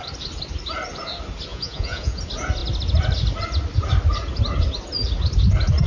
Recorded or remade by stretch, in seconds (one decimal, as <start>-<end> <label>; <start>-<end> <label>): 0.0-1.5 recorded; 1.5-2.2 remade; 2.2-5.9 recorded